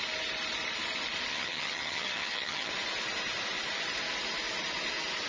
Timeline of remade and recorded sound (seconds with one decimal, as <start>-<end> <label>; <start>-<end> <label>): 0.0-1.3 recorded; 1.3-2.7 remade; 2.7-5.3 recorded